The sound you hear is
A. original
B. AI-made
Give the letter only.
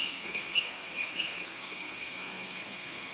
B